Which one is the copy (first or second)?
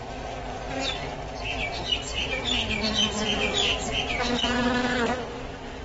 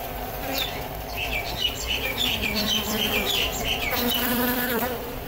second